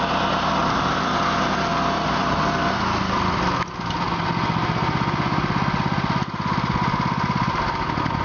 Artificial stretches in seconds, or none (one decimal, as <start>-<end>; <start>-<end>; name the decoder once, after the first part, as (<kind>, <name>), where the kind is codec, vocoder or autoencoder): 0.6-1.2 (vocoder, BigVGAN v2); 1.7-2.7